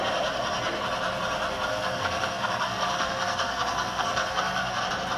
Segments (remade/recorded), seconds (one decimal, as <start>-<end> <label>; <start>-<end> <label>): 0.0-1.7 recorded; 1.7-4.8 remade; 4.8-5.2 recorded